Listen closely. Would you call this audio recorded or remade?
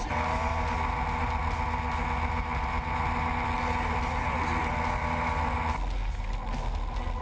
recorded